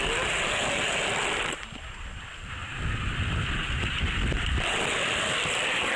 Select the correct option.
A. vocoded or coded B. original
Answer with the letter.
B